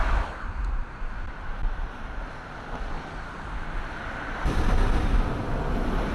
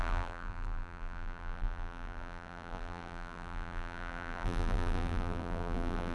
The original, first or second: first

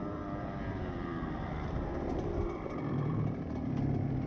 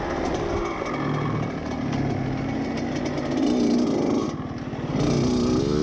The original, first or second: second